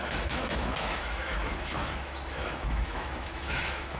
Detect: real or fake fake